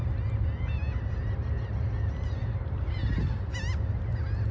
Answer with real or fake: real